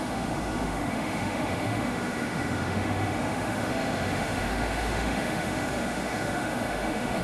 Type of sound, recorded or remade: remade